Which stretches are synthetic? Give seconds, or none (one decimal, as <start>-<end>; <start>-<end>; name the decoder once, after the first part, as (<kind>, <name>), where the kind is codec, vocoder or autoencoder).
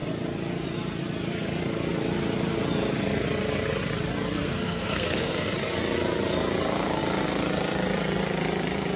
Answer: 4.4-5.5 (codec, SNAC)